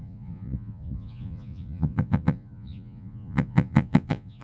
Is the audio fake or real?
fake